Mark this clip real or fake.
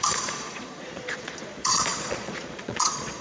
fake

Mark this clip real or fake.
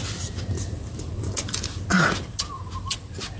real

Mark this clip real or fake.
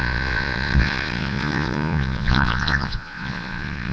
fake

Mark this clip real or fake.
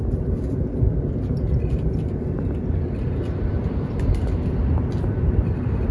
real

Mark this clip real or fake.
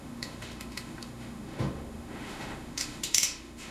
fake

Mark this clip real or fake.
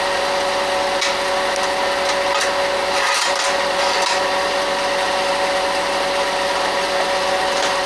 real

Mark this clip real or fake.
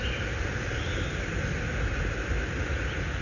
real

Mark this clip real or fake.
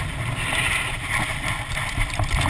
real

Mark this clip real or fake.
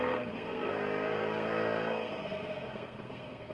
fake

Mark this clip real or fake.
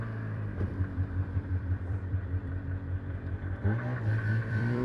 fake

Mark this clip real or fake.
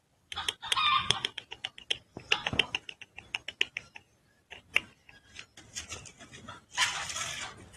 real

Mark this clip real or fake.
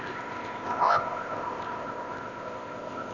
fake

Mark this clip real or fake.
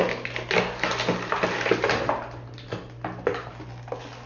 real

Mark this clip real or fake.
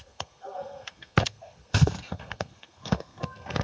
fake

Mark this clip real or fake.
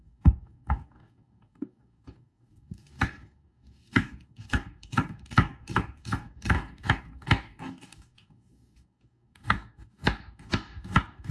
fake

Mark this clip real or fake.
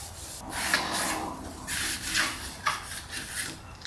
real